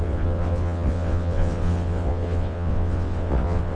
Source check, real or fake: fake